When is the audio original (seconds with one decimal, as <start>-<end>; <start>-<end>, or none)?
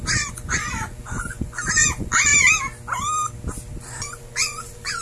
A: 2.3-3.8